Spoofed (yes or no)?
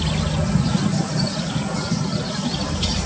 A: no